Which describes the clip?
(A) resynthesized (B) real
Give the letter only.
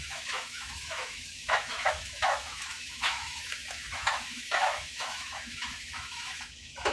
A